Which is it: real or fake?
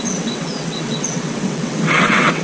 fake